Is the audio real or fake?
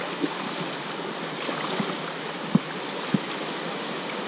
real